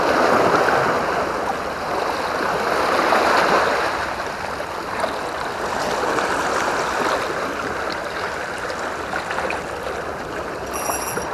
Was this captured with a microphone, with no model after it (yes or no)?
yes